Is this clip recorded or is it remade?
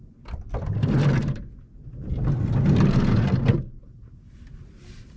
recorded